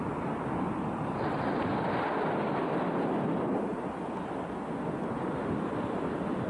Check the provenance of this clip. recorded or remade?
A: recorded